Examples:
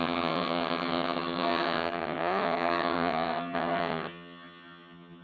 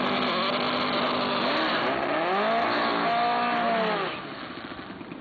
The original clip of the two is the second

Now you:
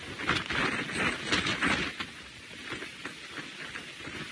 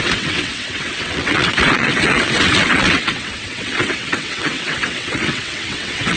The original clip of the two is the first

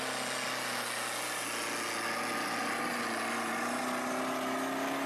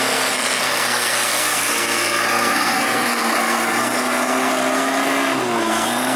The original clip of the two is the first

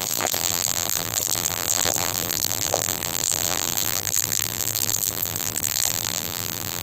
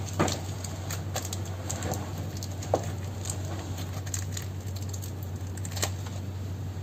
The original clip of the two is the second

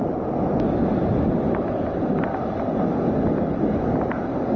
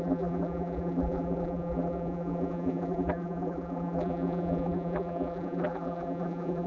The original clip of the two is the first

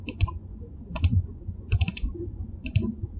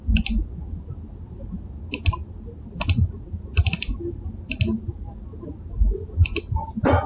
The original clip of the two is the second